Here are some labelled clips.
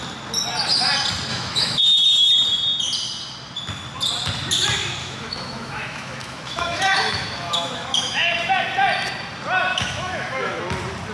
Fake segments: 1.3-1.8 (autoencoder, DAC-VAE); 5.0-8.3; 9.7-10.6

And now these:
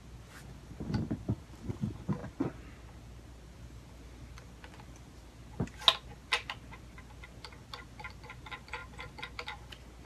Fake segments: none

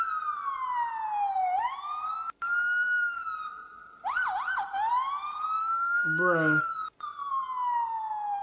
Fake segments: 5.6-6.6 (autoencoder, DAC-VAE)